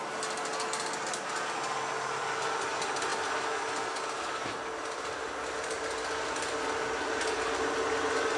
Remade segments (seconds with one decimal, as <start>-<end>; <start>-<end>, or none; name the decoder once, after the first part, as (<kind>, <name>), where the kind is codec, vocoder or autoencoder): none